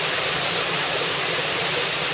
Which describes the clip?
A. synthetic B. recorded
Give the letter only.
B